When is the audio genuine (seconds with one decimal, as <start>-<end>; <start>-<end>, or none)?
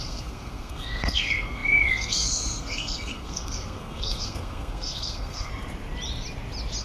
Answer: 5.5-6.8